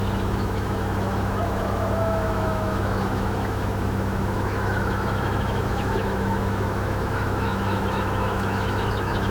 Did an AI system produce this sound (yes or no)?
yes